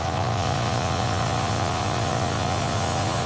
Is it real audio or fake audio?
fake